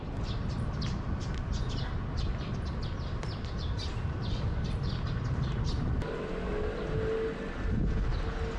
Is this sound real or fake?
real